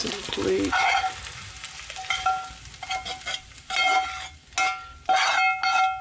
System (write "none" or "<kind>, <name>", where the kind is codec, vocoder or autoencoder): none